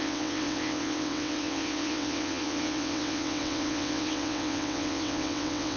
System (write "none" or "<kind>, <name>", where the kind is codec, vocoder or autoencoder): vocoder, WaveNeXt